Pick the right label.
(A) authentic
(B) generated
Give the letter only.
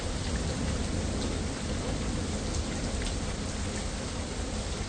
A